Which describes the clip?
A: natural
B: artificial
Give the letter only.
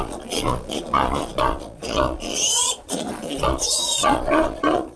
B